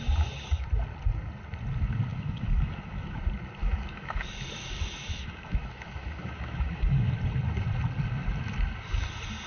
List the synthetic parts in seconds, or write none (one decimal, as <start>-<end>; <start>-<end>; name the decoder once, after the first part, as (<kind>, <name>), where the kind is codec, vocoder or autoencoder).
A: 2.1-3.2 (autoencoder, DAC-VAE); 3.6-7.1